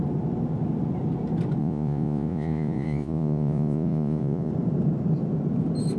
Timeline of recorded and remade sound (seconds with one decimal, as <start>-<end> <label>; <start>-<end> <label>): 0.0-1.6 recorded; 1.6-4.5 remade; 4.5-6.0 recorded